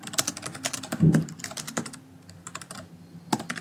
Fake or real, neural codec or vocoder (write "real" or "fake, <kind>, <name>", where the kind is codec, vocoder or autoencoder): real